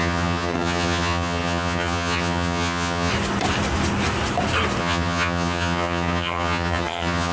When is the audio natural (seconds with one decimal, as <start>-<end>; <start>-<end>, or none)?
3.1-4.8